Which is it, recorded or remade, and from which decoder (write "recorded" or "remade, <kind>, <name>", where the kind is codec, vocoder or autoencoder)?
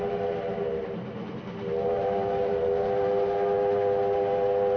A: recorded